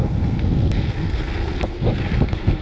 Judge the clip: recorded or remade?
remade